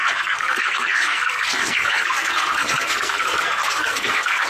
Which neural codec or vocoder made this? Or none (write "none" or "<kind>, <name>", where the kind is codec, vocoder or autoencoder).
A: codec, SNAC